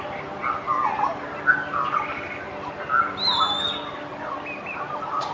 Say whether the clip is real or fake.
real